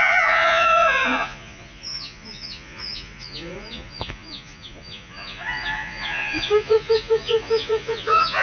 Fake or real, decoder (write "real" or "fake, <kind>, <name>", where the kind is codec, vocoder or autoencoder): fake, vocoder, Vocos